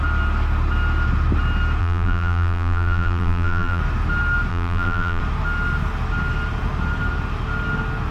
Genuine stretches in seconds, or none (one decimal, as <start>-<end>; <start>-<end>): 0.0-1.8; 3.8-4.5; 5.2-8.1